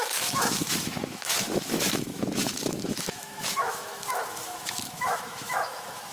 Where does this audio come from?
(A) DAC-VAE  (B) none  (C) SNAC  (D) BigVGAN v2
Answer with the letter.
A